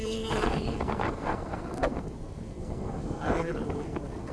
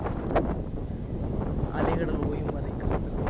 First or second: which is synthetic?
first